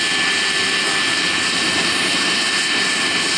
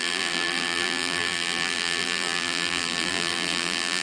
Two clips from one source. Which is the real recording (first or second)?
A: first